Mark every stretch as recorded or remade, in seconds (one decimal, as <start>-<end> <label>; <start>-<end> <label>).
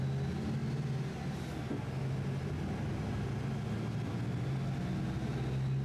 0.0-5.8 recorded